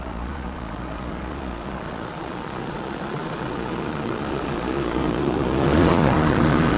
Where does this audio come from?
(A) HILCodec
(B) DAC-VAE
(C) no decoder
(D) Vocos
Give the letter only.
D